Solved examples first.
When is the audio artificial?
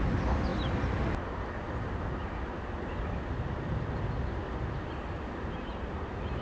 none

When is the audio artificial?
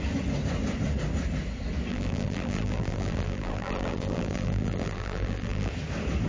1.9-5.7 (vocoder, BigVGAN v2)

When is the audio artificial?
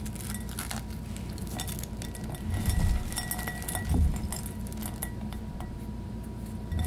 none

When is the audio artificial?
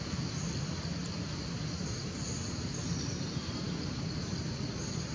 1.0-4.1 (vocoder, BigVGAN v2)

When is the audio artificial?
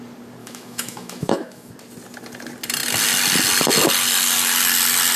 0.4-1.7 (autoencoder, DAC-VAE)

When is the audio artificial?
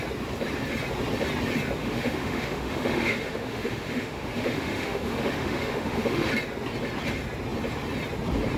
1.8-6.3 (autoencoder, DAC-VAE)